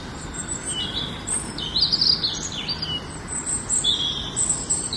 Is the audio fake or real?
real